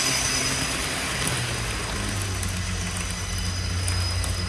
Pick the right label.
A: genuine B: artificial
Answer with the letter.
A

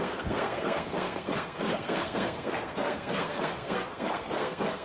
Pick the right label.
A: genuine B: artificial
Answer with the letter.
B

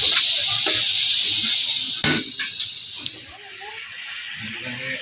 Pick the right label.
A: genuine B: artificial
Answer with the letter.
A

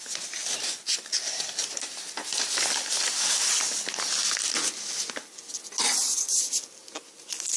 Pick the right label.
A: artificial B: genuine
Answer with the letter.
B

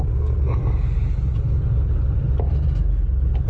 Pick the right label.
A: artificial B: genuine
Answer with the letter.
B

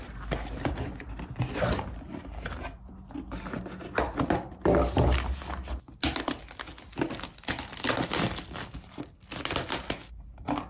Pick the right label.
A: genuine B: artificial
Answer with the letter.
A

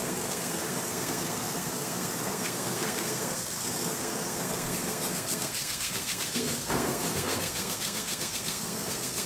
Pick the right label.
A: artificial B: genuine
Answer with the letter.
A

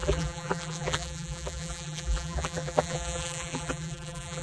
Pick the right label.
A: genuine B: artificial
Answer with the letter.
B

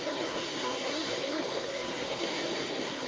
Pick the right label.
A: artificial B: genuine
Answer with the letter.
A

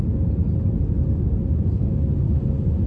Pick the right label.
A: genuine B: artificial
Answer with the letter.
A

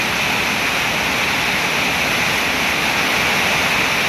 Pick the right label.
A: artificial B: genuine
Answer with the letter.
B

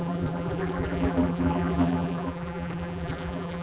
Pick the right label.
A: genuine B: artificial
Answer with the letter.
B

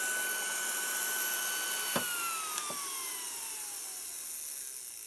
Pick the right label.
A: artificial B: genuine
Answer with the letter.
B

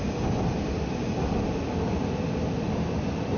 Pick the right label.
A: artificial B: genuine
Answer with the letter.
B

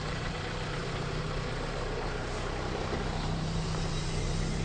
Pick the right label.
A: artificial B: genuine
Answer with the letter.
A